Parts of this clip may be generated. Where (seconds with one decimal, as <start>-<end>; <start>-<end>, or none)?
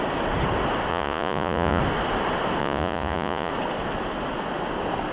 0.9-1.8; 2.6-3.5